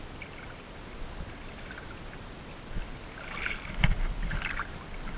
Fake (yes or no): no